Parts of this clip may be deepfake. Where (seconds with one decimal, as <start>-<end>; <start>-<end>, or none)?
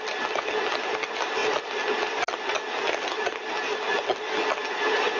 none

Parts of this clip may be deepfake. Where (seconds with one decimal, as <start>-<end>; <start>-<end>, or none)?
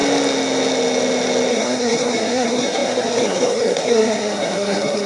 1.5-5.1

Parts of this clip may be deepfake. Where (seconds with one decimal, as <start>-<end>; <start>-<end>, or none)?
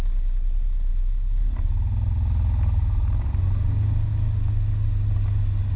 none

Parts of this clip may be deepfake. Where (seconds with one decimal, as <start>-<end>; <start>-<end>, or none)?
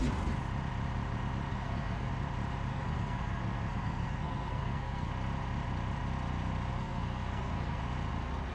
1.5-2.1; 2.7-5.1; 6.7-7.8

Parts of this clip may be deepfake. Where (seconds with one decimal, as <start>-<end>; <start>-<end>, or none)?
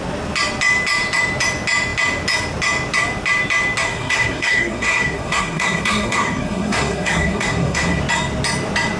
3.9-8.0